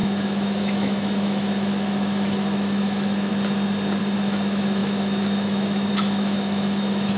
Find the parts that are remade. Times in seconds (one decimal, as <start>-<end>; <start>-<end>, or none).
0.0-3.3; 4.0-7.2